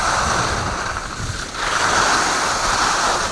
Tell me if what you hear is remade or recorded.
recorded